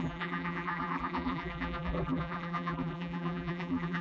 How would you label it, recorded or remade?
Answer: remade